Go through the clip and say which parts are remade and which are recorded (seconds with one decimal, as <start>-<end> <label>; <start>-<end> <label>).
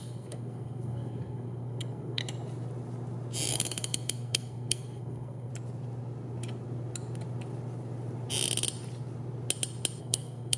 0.0-2.2 remade; 2.2-3.5 recorded; 3.5-5.5 remade; 5.5-10.0 recorded; 10.0-10.6 remade